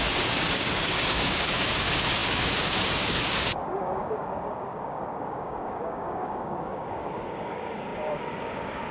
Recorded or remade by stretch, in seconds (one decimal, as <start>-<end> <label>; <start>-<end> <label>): 0.0-8.9 remade